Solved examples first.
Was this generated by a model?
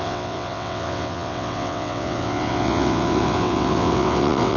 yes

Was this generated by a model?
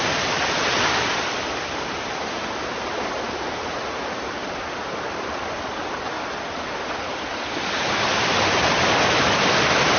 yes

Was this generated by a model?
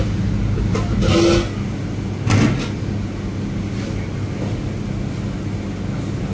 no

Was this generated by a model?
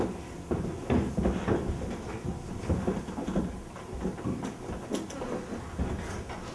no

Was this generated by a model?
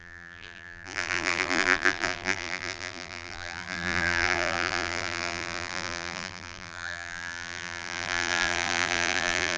yes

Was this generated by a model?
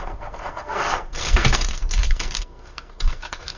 yes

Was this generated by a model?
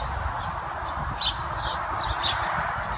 no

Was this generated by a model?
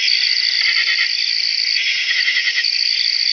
no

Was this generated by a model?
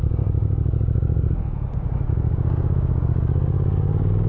yes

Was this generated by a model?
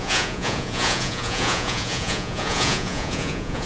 yes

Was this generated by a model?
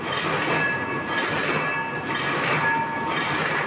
no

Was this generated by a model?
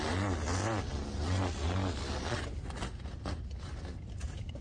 no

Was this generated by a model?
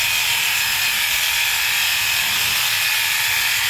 yes